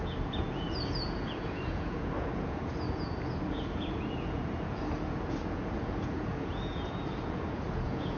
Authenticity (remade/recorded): remade